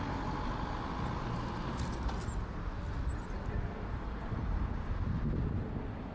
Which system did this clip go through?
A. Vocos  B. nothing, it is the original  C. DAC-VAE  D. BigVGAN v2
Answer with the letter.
B